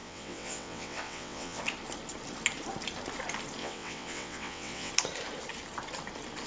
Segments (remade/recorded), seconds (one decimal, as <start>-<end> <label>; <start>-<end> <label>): 0.0-1.6 remade; 1.6-3.6 recorded; 3.6-4.9 remade; 4.9-6.5 recorded